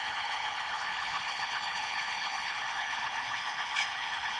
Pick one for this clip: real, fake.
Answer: fake